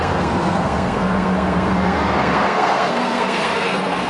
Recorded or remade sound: remade